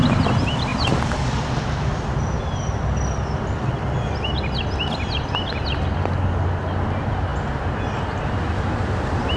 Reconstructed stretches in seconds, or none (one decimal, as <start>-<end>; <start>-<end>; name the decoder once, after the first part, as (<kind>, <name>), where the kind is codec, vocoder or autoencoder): none